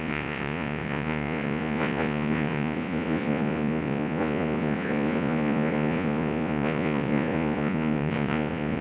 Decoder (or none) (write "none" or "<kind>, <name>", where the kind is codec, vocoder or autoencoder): vocoder, Vocos